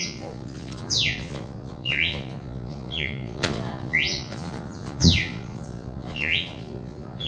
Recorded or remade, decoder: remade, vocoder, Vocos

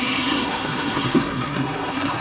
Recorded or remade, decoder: remade, codec, SNAC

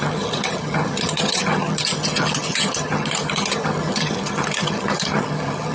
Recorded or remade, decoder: remade, vocoder, HiFi-GAN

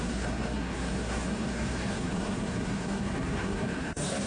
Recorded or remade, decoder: remade, codec, SNAC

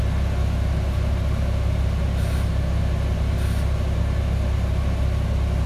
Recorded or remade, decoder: recorded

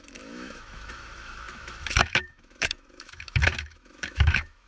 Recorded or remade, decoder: remade, autoencoder, DAC-VAE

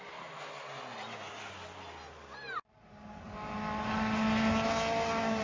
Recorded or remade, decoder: recorded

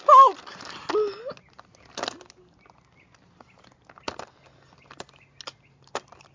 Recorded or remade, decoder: recorded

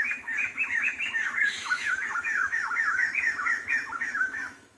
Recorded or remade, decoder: remade, autoencoder, DAC-VAE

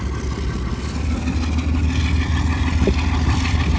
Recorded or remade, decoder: recorded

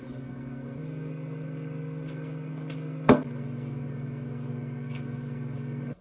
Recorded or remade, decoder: remade, codec, SNAC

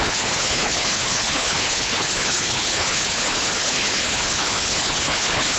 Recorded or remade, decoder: remade, codec, HILCodec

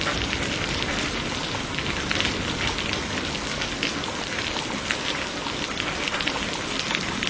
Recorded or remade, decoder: recorded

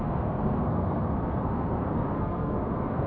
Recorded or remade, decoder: remade, codec, SNAC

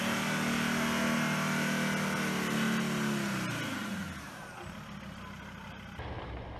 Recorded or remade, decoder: recorded